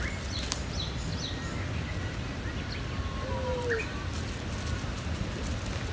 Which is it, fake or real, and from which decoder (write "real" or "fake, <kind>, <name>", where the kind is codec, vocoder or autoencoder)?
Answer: real